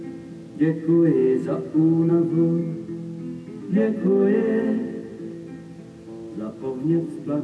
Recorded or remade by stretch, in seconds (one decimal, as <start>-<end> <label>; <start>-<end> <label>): 0.0-7.4 recorded